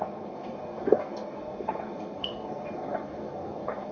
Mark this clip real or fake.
fake